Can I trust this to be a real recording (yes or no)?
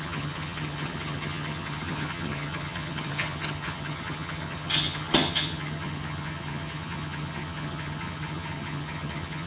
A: no